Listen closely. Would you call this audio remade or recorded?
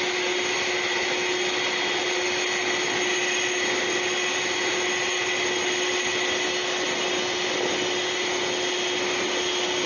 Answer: recorded